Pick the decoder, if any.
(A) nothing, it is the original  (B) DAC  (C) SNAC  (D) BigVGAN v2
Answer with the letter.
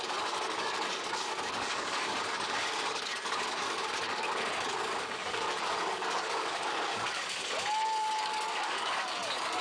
B